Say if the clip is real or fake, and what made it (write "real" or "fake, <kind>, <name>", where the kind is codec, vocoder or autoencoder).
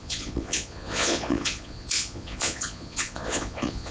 fake, vocoder, Vocos